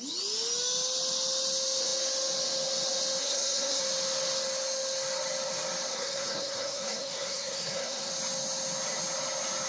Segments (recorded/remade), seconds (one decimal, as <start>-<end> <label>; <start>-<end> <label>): 0.0-3.2 recorded; 3.2-3.8 remade; 3.8-5.9 recorded; 5.9-8.1 remade; 8.1-9.7 recorded